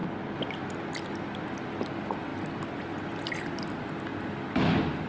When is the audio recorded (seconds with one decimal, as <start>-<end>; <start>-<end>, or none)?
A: 0.0-1.4; 2.3-3.4